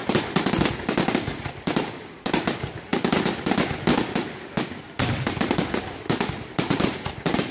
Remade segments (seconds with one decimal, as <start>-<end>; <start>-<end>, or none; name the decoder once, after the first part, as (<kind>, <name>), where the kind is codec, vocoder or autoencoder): none